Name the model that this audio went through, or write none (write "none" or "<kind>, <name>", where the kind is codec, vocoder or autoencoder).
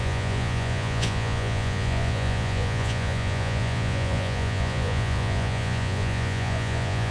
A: vocoder, Vocos